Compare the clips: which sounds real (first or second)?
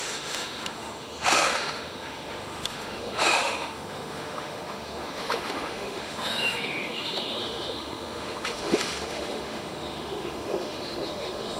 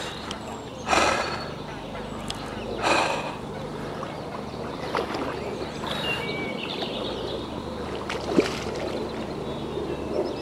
second